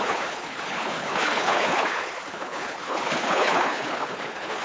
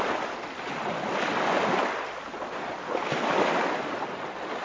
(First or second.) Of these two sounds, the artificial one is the first